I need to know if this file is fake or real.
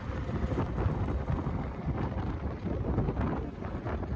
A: real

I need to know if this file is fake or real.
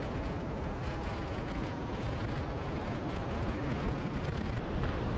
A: real